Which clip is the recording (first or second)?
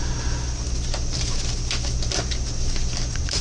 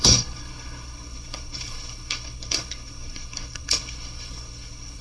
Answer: first